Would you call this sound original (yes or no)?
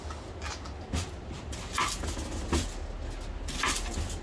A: yes